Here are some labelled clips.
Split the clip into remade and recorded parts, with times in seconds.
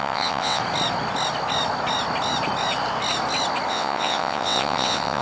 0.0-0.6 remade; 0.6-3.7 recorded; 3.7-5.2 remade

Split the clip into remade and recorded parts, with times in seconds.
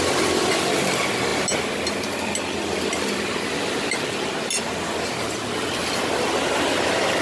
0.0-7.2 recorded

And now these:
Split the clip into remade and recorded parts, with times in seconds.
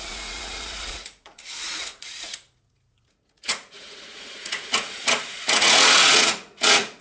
0.0-7.0 remade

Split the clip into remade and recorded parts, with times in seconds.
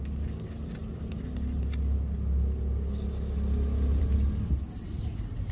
0.0-5.5 recorded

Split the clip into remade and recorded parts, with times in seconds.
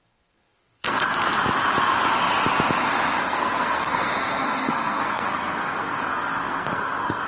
0.0-1.1 remade; 1.1-3.2 recorded; 3.2-7.3 remade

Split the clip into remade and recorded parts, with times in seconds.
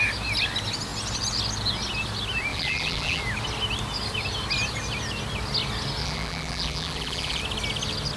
0.0-2.5 recorded; 2.5-3.2 remade; 3.2-6.0 recorded; 6.0-7.4 remade; 7.4-8.2 recorded